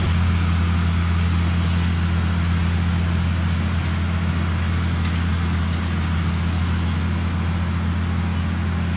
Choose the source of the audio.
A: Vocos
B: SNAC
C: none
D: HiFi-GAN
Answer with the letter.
C